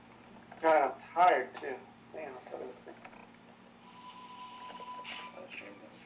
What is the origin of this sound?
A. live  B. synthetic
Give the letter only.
A